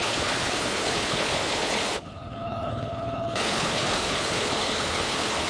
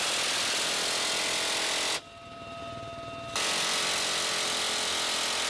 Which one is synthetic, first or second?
first